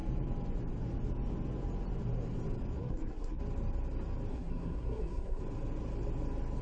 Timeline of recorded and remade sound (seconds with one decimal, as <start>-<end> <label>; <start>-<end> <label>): 0.0-2.8 recorded; 2.8-3.4 remade; 3.4-4.3 recorded; 4.3-5.4 remade; 5.4-6.6 recorded